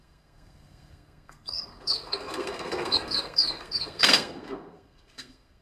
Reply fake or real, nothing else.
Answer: fake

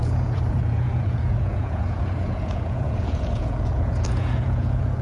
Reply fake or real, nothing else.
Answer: fake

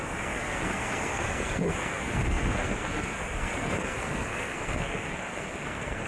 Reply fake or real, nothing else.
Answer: fake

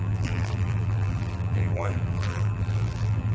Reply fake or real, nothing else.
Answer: fake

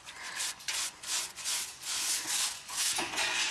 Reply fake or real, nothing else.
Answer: fake